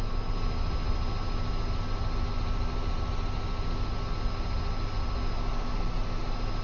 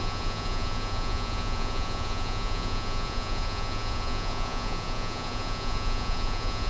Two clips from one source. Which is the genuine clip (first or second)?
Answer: first